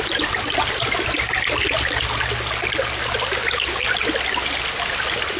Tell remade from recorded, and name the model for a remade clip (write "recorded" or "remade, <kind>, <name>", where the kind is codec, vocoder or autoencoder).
recorded